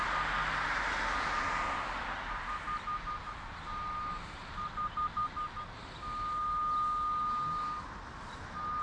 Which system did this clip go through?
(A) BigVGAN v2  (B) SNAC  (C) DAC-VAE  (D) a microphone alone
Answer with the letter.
D